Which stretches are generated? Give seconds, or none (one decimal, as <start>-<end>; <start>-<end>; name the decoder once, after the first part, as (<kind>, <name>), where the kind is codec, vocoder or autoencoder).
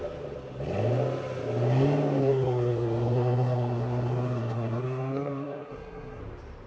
2.2-6.2 (codec, SNAC)